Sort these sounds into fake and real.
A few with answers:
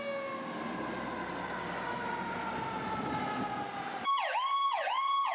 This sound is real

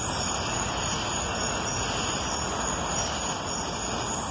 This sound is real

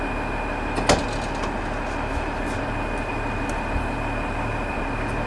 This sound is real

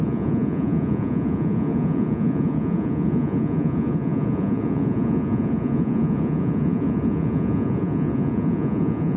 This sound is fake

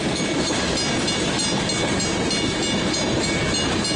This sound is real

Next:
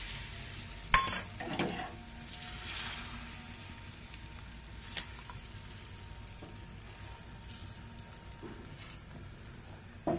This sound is real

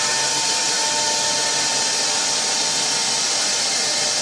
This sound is real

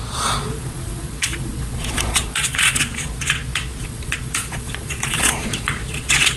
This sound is fake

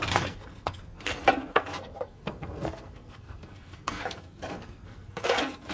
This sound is fake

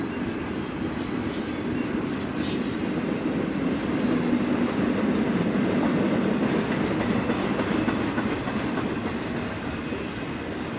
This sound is real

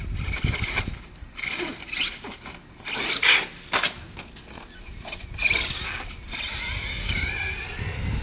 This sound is real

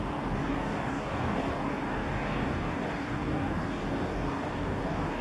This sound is fake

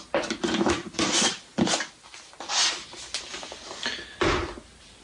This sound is real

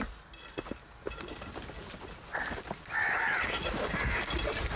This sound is real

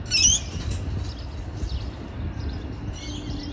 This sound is real